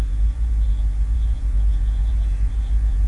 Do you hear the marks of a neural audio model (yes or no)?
yes